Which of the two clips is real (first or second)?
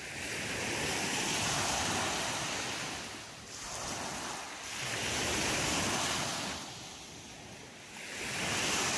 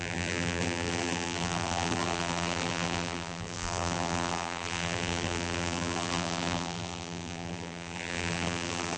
first